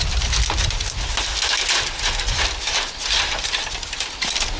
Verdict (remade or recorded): recorded